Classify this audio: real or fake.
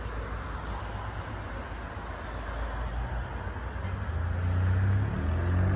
real